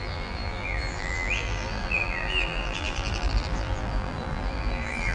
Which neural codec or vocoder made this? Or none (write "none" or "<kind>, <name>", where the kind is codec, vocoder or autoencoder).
vocoder, BigVGAN v2